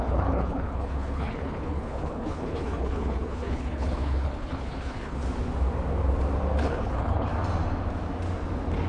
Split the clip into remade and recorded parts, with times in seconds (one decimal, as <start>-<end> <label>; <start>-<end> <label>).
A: 0.0-5.2 remade; 5.2-6.6 recorded; 6.6-7.3 remade; 7.3-8.9 recorded